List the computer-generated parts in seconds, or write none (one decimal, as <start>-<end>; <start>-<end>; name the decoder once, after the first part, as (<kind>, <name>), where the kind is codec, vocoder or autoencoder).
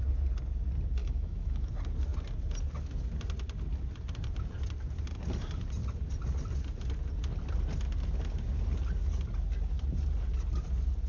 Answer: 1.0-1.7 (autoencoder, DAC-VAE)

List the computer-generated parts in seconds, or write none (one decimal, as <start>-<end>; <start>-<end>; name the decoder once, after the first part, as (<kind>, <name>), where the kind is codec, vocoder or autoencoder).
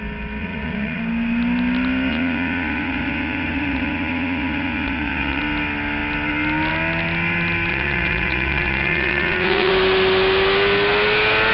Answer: 0.4-1.0 (vocoder, Vocos); 2.1-5.4; 7.7-9.7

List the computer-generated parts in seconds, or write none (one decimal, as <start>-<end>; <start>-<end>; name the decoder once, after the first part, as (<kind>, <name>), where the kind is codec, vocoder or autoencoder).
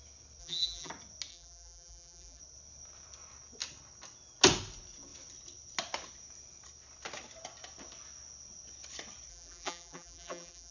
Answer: 0.4-0.9 (vocoder, BigVGAN v2); 1.3-2.4; 9.3-10.7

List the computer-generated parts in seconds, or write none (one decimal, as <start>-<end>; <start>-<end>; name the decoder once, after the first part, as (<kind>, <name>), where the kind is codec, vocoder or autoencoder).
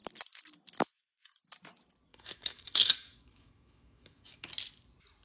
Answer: 2.1-4.5 (autoencoder, DAC-VAE)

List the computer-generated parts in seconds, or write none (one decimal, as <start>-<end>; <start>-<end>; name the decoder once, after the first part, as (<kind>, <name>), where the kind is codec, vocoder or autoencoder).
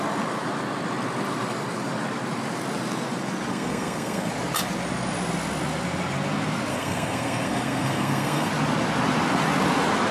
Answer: 3.5-4.3 (codec, SNAC); 6.7-8.5